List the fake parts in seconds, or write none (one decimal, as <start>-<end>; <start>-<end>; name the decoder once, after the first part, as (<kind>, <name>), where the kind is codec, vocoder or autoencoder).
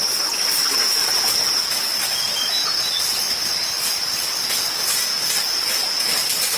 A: none